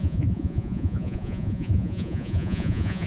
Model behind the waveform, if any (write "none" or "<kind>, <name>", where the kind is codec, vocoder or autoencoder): vocoder, Vocos